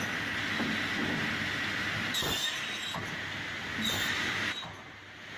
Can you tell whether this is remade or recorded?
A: recorded